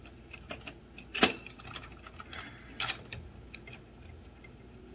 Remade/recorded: recorded